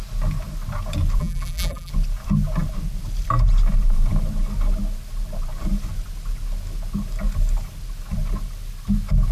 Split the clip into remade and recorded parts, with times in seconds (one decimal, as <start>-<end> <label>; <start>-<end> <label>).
0.0-1.2 recorded; 1.2-1.9 remade; 1.9-9.3 recorded